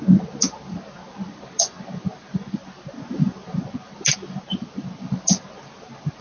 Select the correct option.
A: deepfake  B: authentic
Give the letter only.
B